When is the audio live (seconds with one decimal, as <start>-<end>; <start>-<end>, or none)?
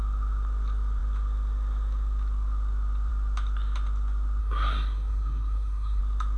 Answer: 0.0-4.4; 6.0-6.4